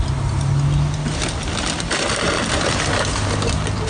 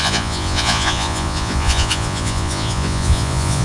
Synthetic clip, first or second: second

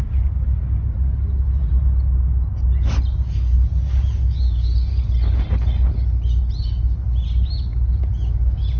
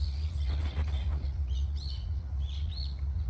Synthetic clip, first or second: second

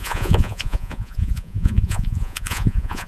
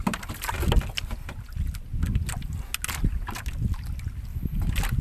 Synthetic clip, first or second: first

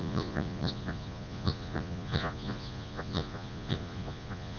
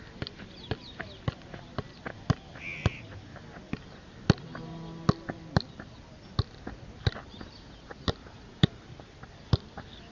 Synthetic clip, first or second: first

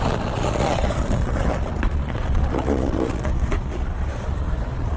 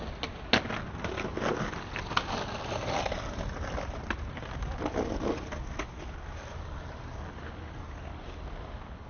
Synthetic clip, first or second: first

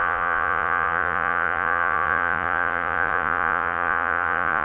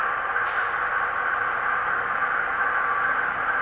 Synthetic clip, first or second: first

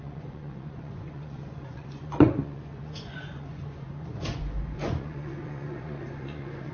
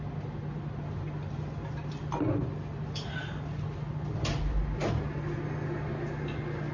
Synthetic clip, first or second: first